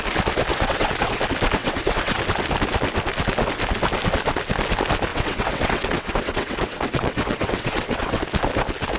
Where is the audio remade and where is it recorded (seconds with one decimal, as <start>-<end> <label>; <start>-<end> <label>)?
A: 0.0-0.5 recorded; 0.5-1.2 remade; 1.2-1.6 recorded; 1.6-2.2 remade; 2.2-5.1 recorded; 5.1-8.2 remade; 8.2-9.0 recorded